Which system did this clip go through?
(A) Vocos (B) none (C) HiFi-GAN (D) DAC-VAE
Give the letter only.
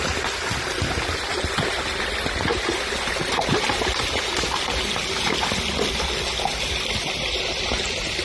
B